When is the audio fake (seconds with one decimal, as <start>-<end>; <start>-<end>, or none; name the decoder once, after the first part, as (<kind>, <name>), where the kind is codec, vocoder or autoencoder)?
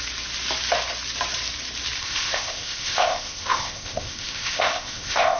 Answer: 2.0-5.4 (codec, ZipCodec)